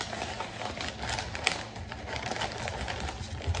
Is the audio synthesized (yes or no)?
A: no